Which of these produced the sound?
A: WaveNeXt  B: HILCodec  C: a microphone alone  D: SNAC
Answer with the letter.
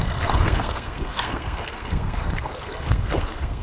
D